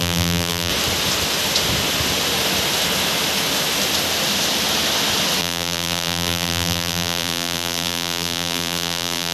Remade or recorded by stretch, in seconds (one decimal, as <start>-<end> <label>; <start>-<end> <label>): 0.0-0.7 remade; 0.7-5.4 recorded; 5.4-9.3 remade